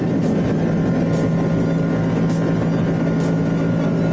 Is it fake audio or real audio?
real